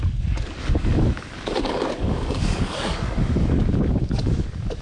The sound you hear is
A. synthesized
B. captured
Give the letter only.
A